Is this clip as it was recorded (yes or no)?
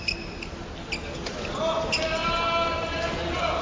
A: yes